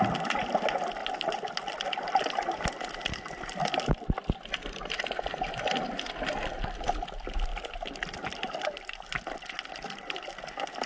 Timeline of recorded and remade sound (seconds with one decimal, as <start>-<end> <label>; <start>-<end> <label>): 0.0-10.9 recorded

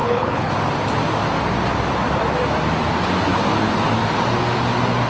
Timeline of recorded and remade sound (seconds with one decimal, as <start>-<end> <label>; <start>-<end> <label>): 0.0-0.5 remade; 0.5-5.1 recorded

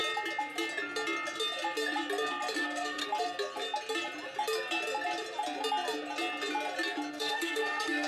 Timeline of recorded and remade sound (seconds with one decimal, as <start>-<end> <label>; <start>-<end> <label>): 0.0-2.6 recorded; 2.6-3.0 remade; 3.0-7.1 recorded; 7.1-8.1 remade

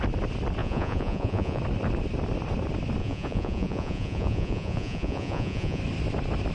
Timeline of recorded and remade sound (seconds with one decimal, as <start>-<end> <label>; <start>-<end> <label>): 0.0-0.6 recorded; 0.6-1.6 remade; 1.6-3.0 recorded; 3.0-5.8 remade; 5.8-6.5 recorded

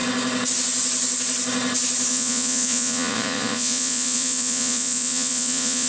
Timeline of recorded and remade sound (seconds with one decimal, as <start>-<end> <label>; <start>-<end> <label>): 0.0-2.1 recorded; 2.1-5.9 remade